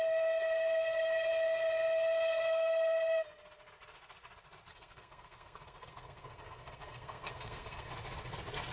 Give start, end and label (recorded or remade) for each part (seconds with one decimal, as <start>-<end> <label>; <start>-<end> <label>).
0.0-4.7 recorded; 4.7-7.9 remade; 7.9-8.7 recorded